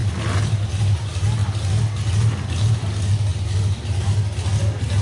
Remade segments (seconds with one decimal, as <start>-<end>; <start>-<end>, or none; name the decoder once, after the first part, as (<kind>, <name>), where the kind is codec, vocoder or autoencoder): none